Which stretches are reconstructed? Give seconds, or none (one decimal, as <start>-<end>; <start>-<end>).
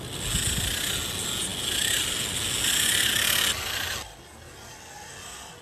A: none